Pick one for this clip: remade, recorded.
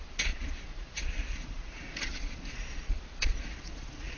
remade